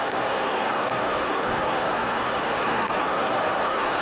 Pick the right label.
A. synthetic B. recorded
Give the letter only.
A